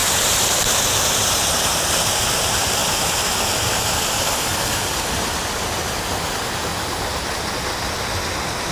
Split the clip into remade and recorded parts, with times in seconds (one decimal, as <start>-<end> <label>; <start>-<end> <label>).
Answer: 0.0-8.7 recorded